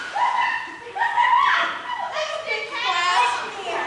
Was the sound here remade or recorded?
recorded